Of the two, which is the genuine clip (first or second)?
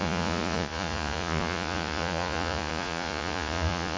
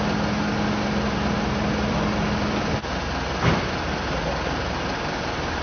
second